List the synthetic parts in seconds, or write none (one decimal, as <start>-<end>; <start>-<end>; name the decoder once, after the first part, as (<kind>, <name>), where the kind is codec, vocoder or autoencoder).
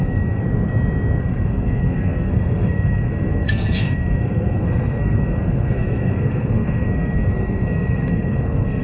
0.0-0.4 (codec, SNAC); 1.2-8.8